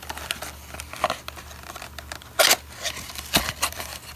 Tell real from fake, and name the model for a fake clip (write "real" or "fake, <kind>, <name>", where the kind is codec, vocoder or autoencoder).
real